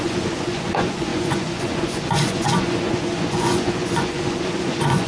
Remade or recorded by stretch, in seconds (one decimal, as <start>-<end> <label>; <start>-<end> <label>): 0.0-5.1 remade